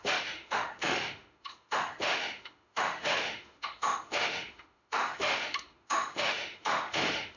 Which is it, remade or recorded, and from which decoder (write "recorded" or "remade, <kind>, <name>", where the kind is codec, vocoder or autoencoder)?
remade, autoencoder, DAC-VAE